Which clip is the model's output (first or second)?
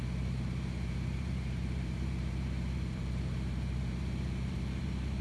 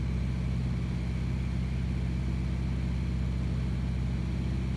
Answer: first